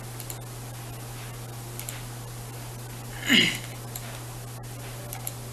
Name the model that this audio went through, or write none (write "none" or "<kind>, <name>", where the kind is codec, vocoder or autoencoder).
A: none